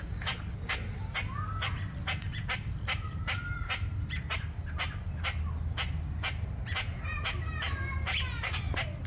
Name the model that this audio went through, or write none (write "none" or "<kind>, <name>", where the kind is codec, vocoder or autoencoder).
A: none